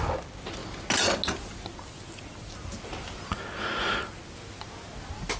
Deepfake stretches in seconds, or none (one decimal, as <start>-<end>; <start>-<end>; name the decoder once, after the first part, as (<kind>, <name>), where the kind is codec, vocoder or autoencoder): none